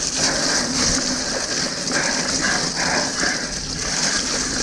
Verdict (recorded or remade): recorded